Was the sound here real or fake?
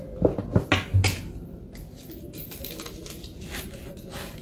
real